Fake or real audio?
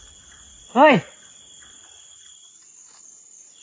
real